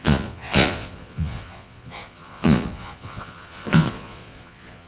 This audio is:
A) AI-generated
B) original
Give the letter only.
A